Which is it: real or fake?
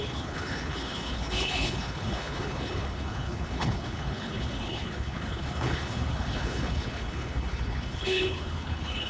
fake